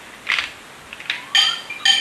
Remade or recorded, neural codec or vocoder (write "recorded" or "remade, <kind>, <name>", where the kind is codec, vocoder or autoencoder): recorded